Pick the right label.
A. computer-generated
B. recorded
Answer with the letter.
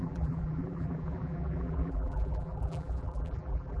A